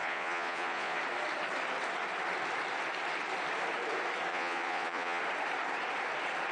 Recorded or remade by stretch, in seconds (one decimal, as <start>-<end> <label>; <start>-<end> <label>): 0.0-1.0 remade; 1.0-4.3 recorded; 4.3-5.2 remade; 5.2-6.5 recorded